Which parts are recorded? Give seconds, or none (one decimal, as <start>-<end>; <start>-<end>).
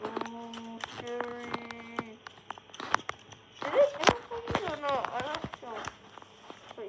0.0-6.9